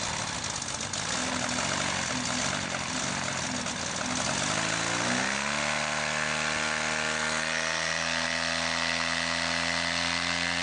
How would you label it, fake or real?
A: real